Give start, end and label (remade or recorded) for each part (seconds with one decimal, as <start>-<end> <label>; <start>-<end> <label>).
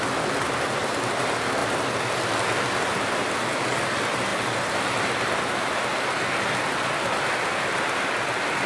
0.0-8.7 recorded